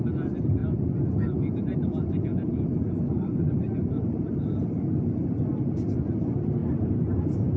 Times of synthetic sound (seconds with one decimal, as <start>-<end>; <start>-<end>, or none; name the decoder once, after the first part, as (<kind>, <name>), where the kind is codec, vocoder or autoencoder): none